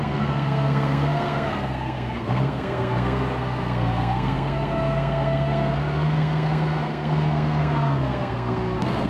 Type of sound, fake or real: fake